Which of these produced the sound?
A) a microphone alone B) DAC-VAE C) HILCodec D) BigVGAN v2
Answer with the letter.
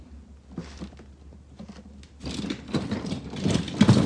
A